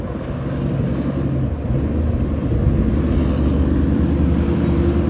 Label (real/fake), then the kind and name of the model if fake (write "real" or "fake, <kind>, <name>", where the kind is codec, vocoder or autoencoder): real